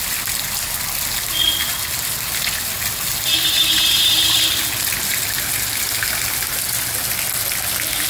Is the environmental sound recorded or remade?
recorded